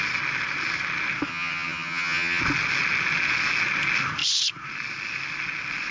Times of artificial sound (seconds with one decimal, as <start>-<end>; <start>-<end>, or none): 1.3-2.4